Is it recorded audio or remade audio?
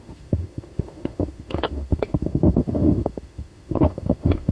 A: remade